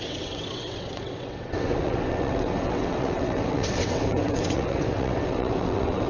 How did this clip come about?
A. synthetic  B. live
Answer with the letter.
A